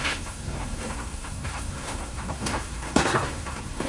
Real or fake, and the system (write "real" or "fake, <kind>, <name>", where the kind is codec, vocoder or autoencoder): fake, codec, SNAC